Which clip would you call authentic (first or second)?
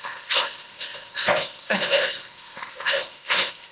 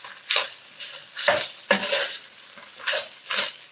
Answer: second